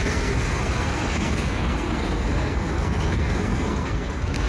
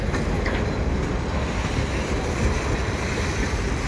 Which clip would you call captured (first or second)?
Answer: second